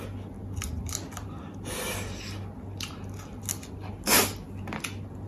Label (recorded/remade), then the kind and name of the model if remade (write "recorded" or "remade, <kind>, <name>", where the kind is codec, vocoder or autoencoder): recorded